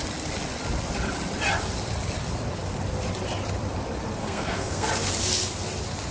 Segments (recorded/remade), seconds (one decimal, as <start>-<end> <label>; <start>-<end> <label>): 0.0-4.2 recorded; 4.2-4.9 remade; 4.9-6.1 recorded